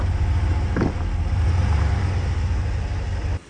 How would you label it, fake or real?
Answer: real